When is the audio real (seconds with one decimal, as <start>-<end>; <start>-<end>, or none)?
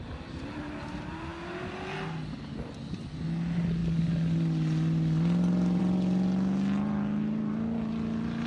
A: 0.0-8.5